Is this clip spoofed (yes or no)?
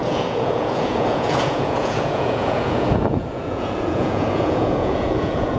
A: yes